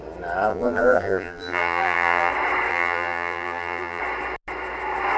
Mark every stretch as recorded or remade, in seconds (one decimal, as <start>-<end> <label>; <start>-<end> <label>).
0.0-0.5 recorded; 0.5-2.3 remade; 2.3-2.7 recorded; 2.7-4.0 remade; 4.0-5.2 recorded